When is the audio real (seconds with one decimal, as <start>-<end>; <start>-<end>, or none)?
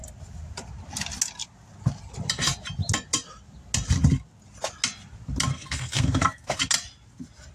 0.0-5.5; 6.6-7.5